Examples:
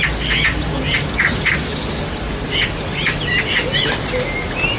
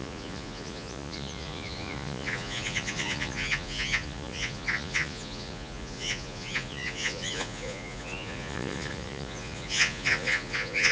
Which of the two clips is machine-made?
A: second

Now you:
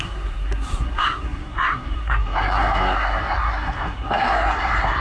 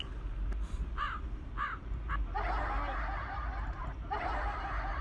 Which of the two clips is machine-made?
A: first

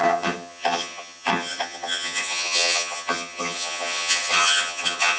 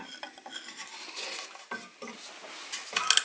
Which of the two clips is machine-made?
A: first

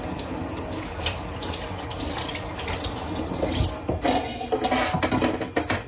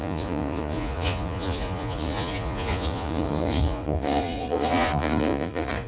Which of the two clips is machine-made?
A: second